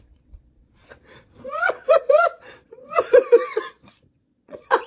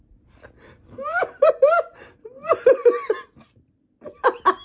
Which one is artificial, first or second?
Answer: first